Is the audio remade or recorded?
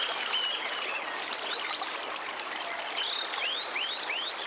recorded